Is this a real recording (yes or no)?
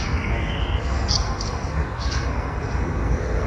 no